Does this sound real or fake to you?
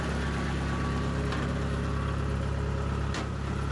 real